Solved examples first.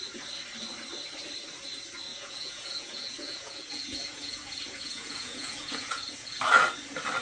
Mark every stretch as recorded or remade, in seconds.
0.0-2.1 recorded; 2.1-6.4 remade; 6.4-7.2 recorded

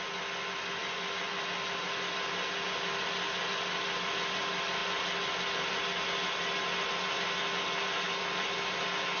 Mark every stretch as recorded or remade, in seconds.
0.0-9.2 recorded

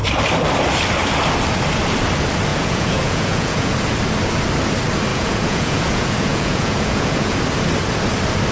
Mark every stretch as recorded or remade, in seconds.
0.0-2.5 recorded; 2.5-3.7 remade; 3.7-5.1 recorded; 5.1-7.4 remade; 7.4-8.5 recorded

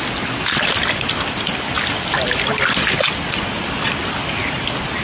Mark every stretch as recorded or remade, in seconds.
0.0-5.0 recorded

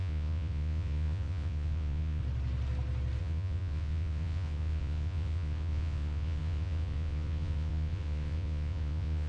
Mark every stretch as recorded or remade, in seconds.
0.0-2.2 remade; 2.2-3.2 recorded; 3.2-9.3 remade

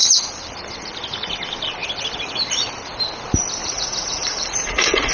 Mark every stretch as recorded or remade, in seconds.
0.0-3.6 recorded; 3.6-5.1 remade